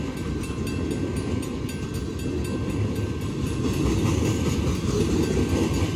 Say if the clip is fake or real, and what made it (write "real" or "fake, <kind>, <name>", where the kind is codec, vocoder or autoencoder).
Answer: real